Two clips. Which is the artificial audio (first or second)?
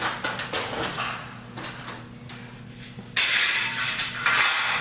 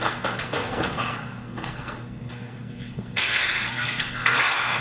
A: second